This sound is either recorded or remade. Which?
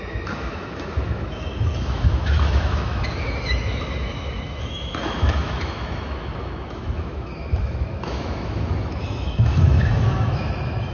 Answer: remade